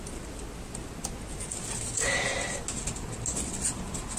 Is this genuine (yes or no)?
yes